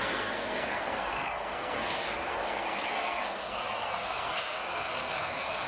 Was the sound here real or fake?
fake